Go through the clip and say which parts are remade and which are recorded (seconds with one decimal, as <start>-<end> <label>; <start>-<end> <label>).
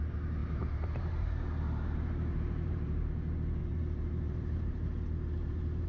0.0-0.4 recorded; 0.4-3.1 remade; 3.1-3.6 recorded; 3.6-5.9 remade